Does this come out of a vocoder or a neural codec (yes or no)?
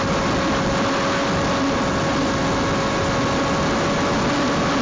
no